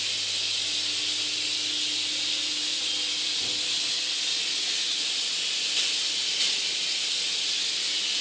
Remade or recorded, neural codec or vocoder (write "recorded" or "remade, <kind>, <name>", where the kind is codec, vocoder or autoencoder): recorded